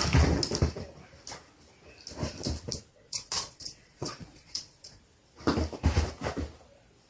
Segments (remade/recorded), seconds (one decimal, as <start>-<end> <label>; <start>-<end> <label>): 0.0-2.9 recorded; 2.9-5.0 remade; 5.0-7.1 recorded